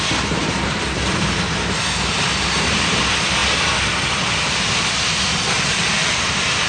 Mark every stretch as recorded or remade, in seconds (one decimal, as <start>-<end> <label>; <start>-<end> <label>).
0.0-0.4 recorded; 0.4-3.0 remade; 3.0-6.7 recorded